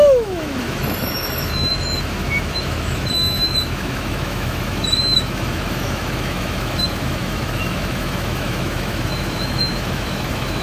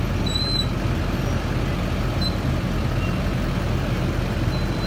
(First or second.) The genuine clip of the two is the second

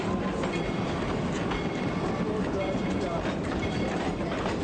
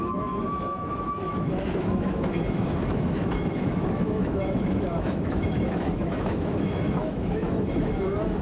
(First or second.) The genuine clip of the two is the first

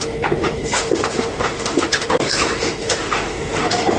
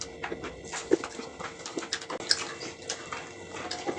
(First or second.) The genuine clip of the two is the second